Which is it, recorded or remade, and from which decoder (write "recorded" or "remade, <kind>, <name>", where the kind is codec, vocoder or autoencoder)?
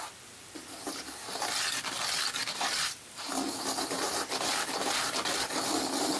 recorded